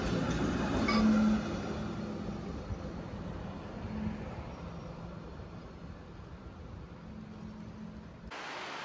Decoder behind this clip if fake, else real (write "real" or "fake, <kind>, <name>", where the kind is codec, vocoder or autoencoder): real